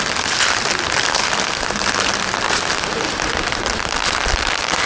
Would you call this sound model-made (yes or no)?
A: no